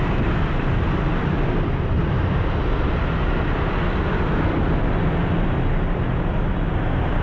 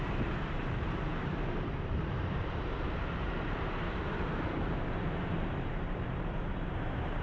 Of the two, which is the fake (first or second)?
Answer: second